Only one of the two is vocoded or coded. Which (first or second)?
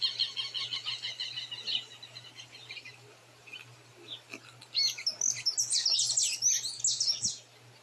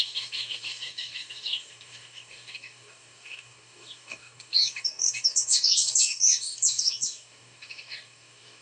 second